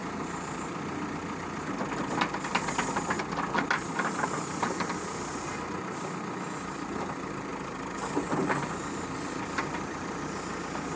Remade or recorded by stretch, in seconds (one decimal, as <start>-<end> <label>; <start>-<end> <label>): 0.0-11.0 recorded